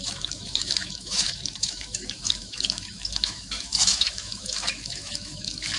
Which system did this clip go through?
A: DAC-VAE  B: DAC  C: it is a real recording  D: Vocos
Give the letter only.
A